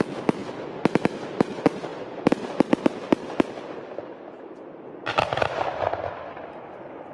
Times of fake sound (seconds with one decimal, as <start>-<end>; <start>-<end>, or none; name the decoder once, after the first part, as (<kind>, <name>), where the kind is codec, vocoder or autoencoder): none